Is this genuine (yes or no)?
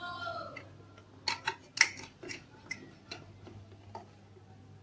yes